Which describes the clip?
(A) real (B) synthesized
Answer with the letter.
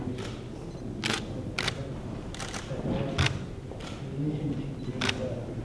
A